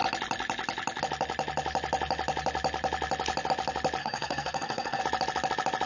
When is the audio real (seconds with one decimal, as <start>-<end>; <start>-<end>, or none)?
0.0-4.0; 5.0-5.9